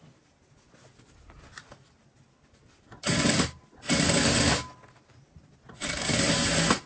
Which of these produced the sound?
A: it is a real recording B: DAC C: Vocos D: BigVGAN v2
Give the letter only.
A